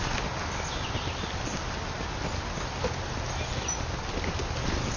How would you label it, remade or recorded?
recorded